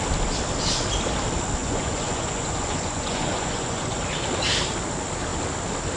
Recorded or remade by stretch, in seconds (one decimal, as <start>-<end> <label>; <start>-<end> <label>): 0.0-1.6 recorded; 1.6-4.0 remade; 4.0-6.0 recorded